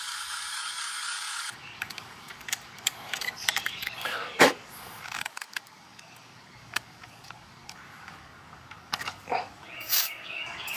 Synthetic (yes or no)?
yes